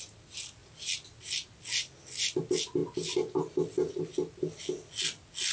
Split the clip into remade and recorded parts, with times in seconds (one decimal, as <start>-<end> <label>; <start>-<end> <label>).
0.0-5.5 recorded